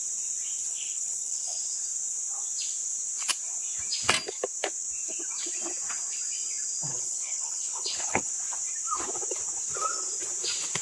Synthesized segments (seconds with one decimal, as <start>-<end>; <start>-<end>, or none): 0.7-1.6; 6.9-8.3